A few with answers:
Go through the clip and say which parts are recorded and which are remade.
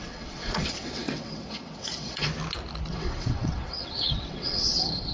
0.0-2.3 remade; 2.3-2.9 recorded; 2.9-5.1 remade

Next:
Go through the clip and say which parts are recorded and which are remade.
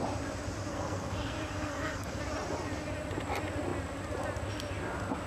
0.0-0.7 recorded; 0.7-2.2 remade; 2.2-5.3 recorded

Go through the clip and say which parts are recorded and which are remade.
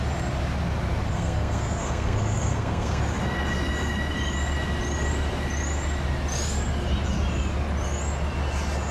0.0-1.1 recorded; 1.1-3.0 remade; 3.0-8.9 recorded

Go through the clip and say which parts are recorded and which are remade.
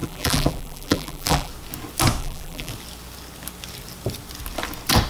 0.0-1.5 remade; 1.5-2.2 recorded; 2.2-2.7 remade; 2.7-5.1 recorded